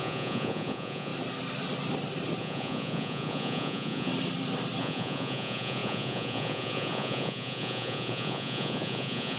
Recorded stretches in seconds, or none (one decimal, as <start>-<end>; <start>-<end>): 1.1-2.4; 4.1-4.8